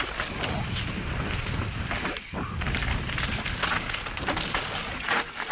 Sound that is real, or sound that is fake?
real